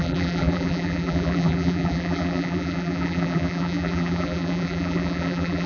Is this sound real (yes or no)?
no